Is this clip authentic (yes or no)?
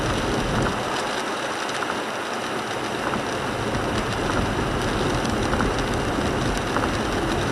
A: yes